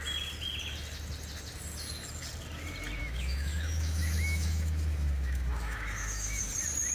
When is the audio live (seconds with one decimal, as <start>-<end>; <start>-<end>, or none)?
0.0-3.0; 6.4-6.9